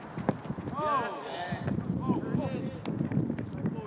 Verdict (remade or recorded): remade